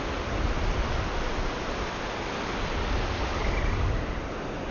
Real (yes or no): yes